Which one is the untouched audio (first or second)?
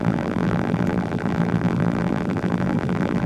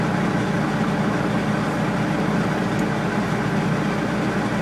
second